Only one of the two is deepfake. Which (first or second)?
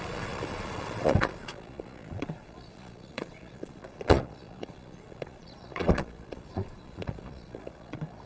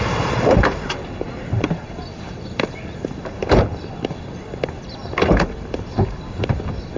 first